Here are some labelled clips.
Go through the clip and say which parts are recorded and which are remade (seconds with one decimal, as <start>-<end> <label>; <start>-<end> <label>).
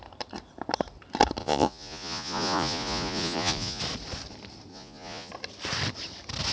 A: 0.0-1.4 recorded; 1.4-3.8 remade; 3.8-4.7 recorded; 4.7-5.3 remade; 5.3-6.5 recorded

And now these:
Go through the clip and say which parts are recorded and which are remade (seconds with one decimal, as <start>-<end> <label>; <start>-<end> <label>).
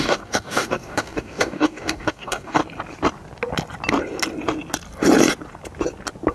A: 0.0-2.6 remade; 2.6-6.3 recorded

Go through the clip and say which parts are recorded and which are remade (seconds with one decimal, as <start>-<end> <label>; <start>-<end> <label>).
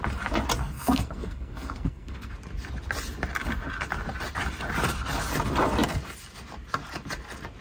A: 0.0-0.6 recorded; 0.6-2.3 remade; 2.3-7.6 recorded